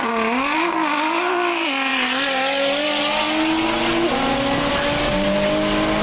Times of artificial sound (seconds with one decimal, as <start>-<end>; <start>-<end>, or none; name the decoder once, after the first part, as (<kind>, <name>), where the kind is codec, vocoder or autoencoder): none